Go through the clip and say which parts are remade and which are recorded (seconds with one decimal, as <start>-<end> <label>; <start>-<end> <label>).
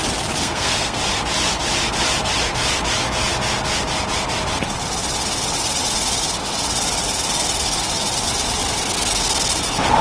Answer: 0.0-0.4 recorded; 0.4-1.0 remade; 1.0-10.0 recorded